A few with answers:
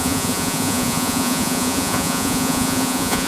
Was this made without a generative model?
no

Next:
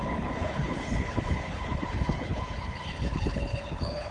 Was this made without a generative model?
no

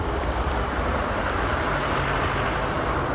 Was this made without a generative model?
no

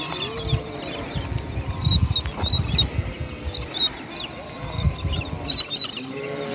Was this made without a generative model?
yes